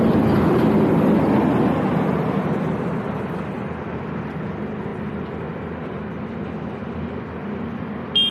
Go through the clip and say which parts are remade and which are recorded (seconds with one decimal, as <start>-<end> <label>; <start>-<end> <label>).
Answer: 0.0-8.3 recorded

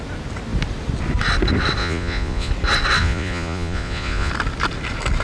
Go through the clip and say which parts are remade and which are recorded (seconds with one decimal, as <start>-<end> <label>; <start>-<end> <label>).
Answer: 0.0-1.8 recorded; 1.8-2.5 remade; 2.5-3.0 recorded; 3.0-4.3 remade; 4.3-5.2 recorded

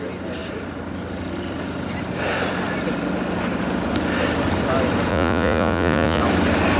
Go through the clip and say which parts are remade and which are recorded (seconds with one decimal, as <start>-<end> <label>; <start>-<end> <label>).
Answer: 0.0-5.1 recorded; 5.1-6.2 remade; 6.2-6.8 recorded

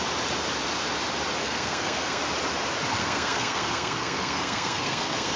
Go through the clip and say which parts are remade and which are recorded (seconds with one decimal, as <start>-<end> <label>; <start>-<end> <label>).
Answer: 0.0-1.4 recorded; 1.4-2.3 remade; 2.3-3.0 recorded; 3.0-5.4 remade